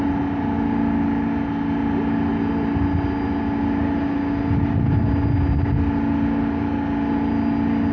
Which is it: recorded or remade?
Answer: recorded